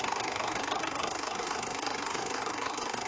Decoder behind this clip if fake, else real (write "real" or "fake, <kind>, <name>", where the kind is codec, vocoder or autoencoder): fake, codec, SNAC